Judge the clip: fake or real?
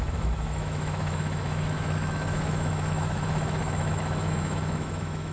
fake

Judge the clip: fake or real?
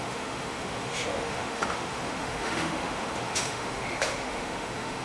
fake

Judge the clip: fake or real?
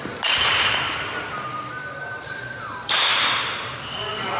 real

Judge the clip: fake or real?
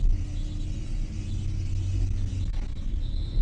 real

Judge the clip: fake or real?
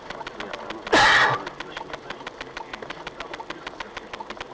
real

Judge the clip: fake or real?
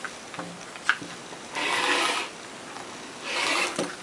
real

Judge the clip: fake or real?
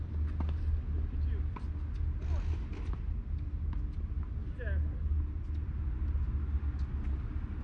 real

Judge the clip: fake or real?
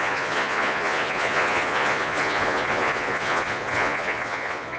fake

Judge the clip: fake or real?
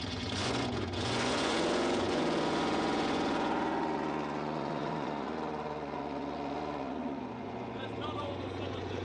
fake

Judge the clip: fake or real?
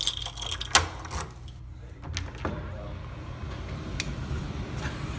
real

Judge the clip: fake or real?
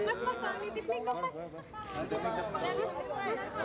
real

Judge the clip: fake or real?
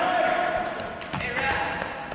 real